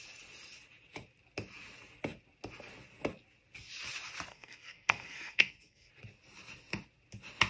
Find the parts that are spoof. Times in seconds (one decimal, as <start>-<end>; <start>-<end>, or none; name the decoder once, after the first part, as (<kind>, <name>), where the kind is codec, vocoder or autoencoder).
4.3-5.9 (codec, SNAC)